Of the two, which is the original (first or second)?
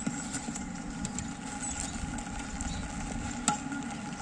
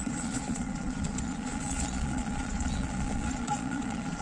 first